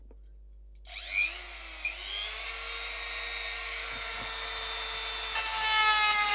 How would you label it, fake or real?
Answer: real